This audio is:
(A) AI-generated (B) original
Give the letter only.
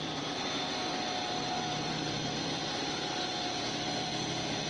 A